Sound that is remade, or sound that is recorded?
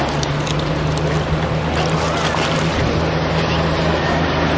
recorded